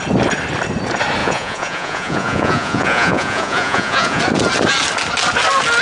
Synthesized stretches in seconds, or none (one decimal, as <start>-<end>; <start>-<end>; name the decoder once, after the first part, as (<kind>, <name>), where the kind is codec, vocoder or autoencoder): 1.2-4.2 (vocoder, Vocos)